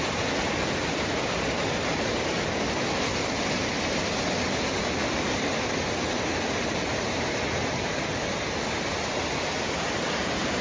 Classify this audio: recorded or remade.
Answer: recorded